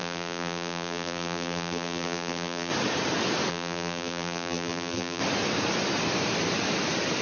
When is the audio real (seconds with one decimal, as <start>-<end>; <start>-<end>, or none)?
2.7-3.5; 5.2-7.2

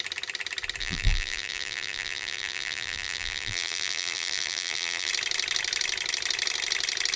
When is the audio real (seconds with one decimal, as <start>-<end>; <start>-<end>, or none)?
0.0-0.8; 5.1-7.2